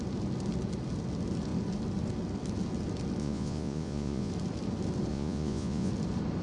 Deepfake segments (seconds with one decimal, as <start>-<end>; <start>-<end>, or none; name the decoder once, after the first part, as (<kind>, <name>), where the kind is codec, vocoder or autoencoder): 3.2-4.3 (vocoder, Vocos); 5.1-5.9